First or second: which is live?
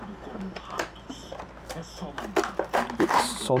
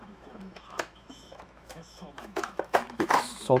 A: first